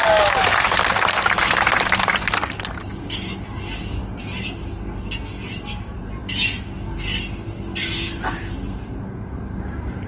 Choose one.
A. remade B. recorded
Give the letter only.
B